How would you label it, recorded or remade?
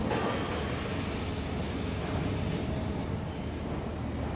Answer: recorded